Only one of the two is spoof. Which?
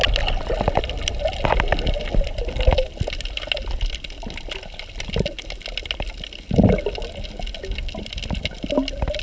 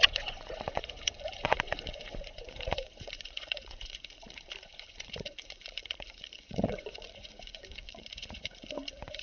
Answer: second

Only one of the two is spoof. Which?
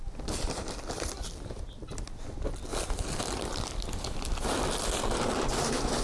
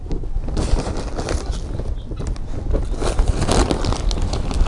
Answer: first